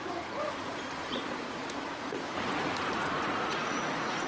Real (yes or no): no